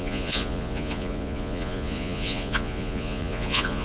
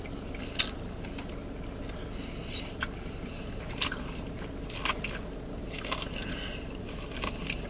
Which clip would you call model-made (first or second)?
first